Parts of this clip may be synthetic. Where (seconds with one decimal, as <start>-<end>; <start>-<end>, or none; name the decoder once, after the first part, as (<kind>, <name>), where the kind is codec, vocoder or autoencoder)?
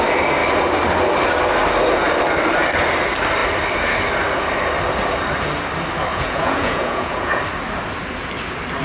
6.1-7.4 (vocoder, Vocos)